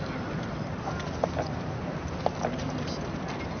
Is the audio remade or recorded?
recorded